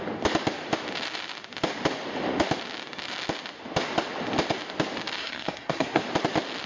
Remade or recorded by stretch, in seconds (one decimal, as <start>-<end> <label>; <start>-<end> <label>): 0.0-5.2 recorded; 5.2-6.0 remade; 6.0-6.7 recorded

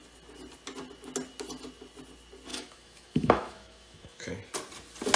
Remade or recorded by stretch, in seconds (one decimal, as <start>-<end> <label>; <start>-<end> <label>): 0.0-2.5 recorded; 2.5-4.3 remade; 4.3-5.2 recorded

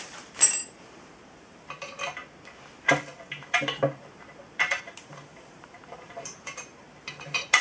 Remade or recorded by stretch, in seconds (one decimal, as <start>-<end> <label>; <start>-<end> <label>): 0.0-2.2 remade; 2.2-3.4 recorded; 3.4-7.6 remade

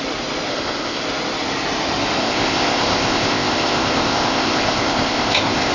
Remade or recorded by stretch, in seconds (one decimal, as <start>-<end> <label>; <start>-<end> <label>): 0.0-0.5 recorded; 0.5-1.0 remade; 1.0-2.2 recorded; 2.2-5.7 remade

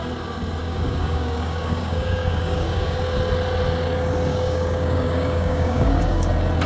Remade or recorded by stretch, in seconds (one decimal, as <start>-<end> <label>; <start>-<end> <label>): 0.0-0.6 recorded; 0.6-3.0 remade; 3.0-4.3 recorded; 4.3-6.3 remade; 6.3-6.7 recorded

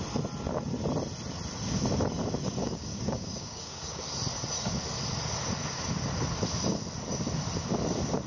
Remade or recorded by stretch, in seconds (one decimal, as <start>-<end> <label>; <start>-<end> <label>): 0.0-2.6 recorded; 2.6-4.0 remade; 4.0-8.3 recorded

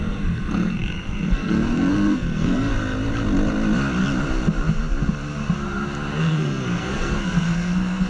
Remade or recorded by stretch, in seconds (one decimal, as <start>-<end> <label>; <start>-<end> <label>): 0.0-2.7 remade; 2.7-6.2 recorded; 6.2-8.1 remade